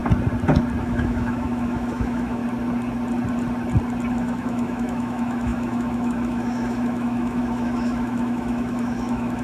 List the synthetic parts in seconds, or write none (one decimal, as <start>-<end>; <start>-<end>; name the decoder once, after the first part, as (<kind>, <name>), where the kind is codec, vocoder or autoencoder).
0.8-2.4 (autoencoder, DAC-VAE); 4.1-9.4